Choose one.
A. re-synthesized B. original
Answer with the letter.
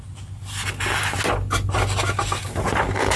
B